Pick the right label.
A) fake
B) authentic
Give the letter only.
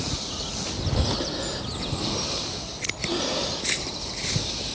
B